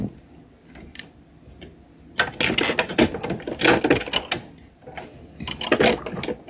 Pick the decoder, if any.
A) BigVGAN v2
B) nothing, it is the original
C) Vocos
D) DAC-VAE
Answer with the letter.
B